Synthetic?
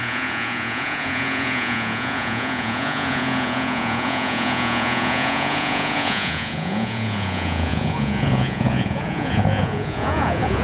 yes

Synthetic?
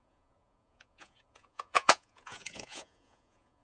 yes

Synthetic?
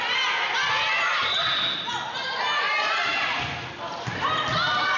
no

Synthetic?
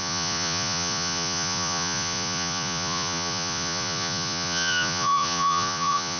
yes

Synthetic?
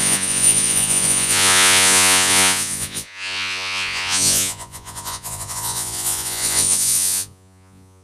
yes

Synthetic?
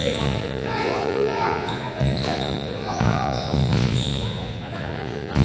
yes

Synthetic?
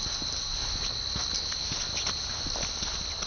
no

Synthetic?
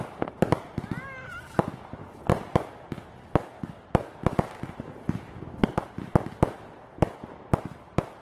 no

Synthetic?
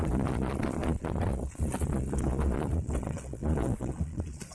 yes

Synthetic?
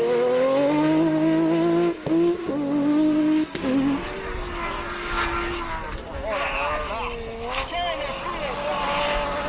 no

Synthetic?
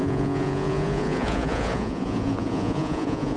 yes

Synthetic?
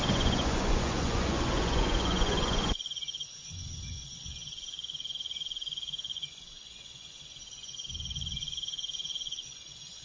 yes